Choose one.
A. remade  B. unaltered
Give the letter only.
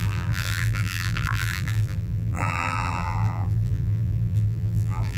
A